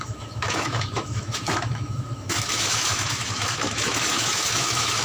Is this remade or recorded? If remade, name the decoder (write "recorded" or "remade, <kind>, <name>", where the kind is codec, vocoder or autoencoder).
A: remade, autoencoder, DAC-VAE